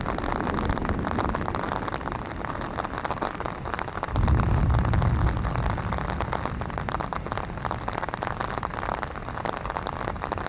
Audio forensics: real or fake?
real